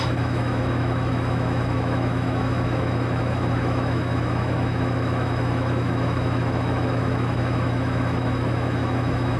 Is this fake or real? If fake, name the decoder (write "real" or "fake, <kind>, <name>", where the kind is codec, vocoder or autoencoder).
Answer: fake, autoencoder, DAC-VAE